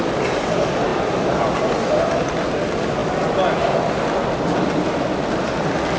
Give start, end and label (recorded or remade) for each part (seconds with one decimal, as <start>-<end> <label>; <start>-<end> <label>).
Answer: 0.0-6.0 recorded